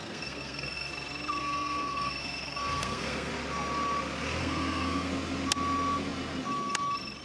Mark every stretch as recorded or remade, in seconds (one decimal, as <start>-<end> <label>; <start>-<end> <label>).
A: 0.0-0.9 remade; 0.9-1.4 recorded; 1.4-3.3 remade; 3.3-4.4 recorded; 4.4-5.1 remade; 5.1-7.2 recorded